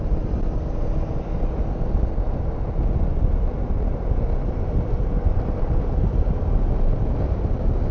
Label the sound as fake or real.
real